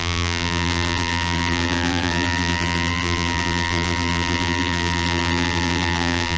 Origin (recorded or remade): remade